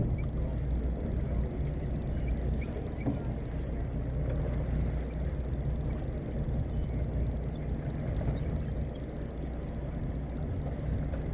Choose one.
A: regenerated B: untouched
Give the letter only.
B